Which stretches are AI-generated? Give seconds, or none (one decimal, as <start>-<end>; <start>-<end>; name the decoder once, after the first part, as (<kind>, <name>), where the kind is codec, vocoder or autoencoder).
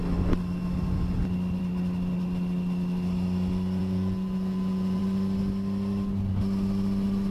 3.8-5.0 (vocoder, Vocos)